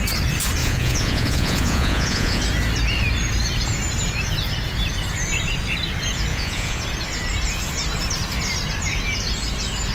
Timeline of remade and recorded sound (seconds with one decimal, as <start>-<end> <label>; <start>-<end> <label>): 0.0-0.6 recorded; 0.6-2.4 remade; 2.4-6.3 recorded; 6.3-6.8 remade; 6.8-9.9 recorded